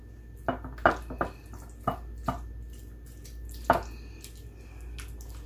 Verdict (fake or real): real